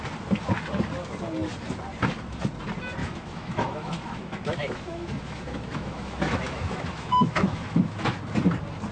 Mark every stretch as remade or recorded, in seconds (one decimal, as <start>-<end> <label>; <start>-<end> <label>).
0.0-3.0 recorded; 3.0-8.2 remade; 8.2-8.9 recorded